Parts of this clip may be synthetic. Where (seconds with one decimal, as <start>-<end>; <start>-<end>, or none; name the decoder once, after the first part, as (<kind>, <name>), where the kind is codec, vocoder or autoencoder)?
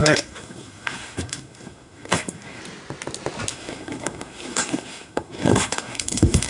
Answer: 0.0-2.6 (codec, SNAC); 3.5-6.5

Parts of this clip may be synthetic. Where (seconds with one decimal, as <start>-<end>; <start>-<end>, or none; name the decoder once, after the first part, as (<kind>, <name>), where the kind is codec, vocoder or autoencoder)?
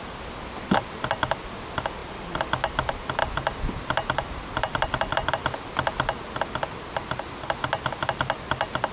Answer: 2.0-2.5 (vocoder, BigVGAN v2); 3.2-5.3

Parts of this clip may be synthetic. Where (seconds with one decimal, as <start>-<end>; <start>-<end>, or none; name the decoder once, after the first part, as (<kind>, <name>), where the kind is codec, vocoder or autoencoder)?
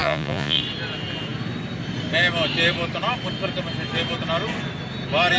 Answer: 0.0-0.6 (vocoder, Vocos)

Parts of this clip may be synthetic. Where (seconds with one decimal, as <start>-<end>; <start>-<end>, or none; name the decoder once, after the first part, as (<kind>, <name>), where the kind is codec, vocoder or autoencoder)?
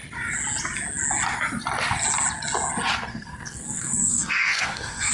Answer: 3.1-5.1 (codec, SNAC)